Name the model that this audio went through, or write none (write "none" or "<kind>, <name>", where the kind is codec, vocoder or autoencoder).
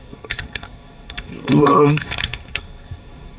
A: codec, SNAC